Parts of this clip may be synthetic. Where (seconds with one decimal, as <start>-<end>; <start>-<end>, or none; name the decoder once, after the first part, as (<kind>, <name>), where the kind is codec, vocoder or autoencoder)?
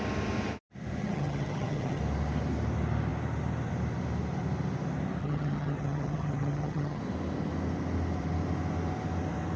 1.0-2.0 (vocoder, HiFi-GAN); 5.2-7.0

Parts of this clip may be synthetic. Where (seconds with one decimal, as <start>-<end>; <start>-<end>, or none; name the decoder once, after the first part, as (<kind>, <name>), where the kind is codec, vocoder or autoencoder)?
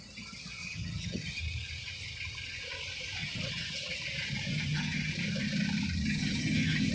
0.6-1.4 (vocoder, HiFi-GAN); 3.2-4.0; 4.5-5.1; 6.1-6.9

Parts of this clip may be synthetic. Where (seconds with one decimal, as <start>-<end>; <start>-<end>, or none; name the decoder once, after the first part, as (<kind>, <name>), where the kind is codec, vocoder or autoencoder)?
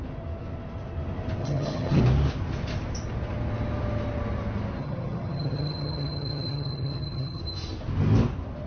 1.4-2.0 (vocoder, HiFi-GAN); 4.8-7.4